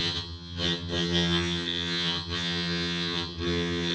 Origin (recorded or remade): remade